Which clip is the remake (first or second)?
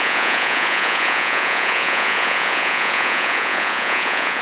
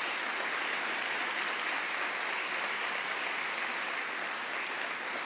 first